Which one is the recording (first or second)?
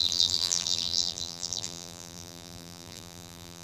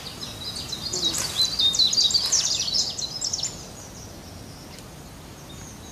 second